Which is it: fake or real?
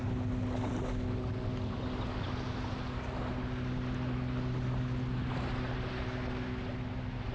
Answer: real